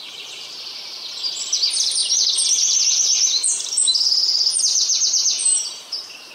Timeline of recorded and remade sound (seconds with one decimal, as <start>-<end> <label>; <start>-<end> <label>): 0.0-5.4 recorded; 5.4-6.3 remade